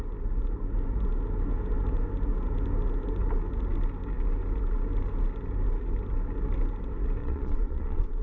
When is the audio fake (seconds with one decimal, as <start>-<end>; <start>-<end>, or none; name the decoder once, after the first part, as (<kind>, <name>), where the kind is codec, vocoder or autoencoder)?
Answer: 7.2-8.2 (vocoder, Vocos)

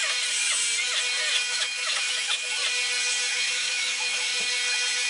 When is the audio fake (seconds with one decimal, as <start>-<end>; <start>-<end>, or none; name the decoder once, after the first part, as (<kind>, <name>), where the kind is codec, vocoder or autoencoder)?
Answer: 1.5-2.6 (autoencoder, DAC-VAE); 3.3-4.3

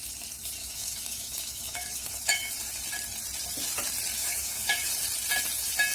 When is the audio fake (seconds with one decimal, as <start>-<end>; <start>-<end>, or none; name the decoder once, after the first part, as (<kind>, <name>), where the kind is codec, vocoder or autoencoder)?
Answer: 0.6-2.5 (autoencoder, DAC-VAE); 4.2-4.9

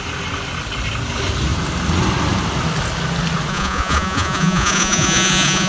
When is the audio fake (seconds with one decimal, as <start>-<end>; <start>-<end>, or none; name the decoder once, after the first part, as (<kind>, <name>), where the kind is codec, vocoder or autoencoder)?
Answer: 3.5-5.7 (vocoder, Vocos)